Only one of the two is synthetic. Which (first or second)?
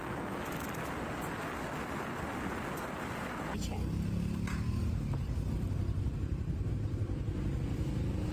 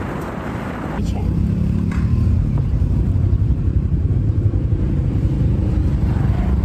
second